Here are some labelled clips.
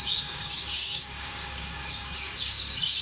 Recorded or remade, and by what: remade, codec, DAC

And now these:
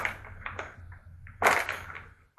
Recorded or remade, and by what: recorded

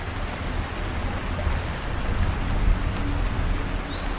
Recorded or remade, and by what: recorded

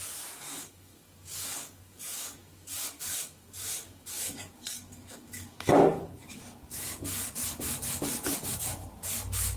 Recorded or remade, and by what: remade, codec, DAC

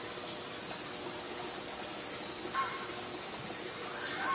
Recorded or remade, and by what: recorded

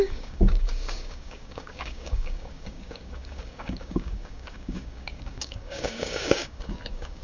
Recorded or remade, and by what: remade, codec, DAC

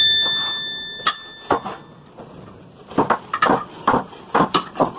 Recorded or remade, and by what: recorded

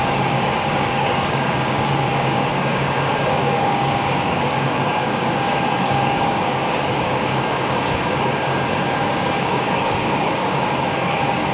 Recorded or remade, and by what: remade, codec, DAC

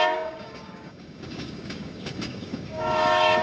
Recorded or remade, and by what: remade, codec, DAC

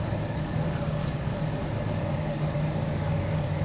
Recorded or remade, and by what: remade, codec, DAC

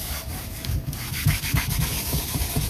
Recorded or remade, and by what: remade, codec, DAC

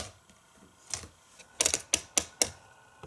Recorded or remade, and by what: recorded